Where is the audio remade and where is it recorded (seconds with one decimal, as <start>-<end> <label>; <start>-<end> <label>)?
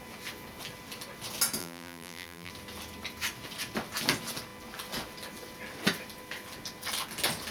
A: 0.0-1.6 recorded; 1.6-2.5 remade; 2.5-7.5 recorded